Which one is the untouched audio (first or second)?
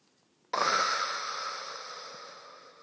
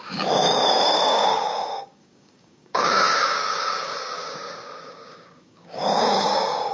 first